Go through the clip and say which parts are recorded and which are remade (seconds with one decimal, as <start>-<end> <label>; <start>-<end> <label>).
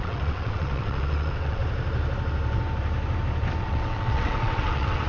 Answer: 0.0-1.6 remade; 1.6-3.6 recorded; 3.6-5.1 remade